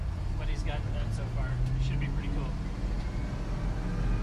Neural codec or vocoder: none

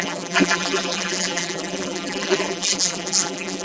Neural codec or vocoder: vocoder, BigVGAN v2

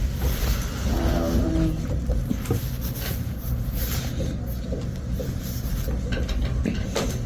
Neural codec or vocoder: none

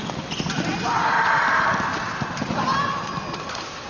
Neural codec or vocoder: none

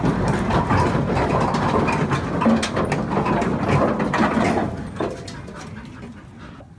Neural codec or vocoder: none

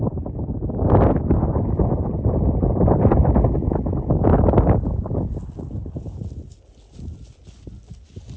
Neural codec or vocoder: none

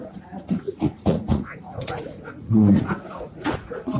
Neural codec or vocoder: vocoder, Vocos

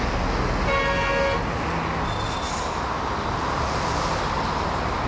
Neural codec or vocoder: none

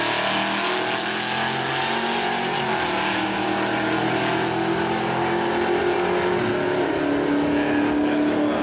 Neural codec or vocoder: none